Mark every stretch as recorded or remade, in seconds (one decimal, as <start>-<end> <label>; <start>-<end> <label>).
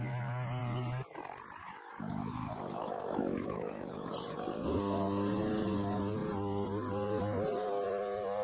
0.0-1.6 recorded; 1.6-4.1 remade; 4.1-8.4 recorded